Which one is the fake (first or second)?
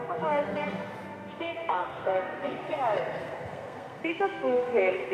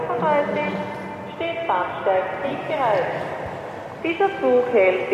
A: first